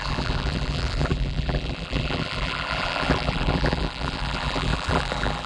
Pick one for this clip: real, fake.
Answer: fake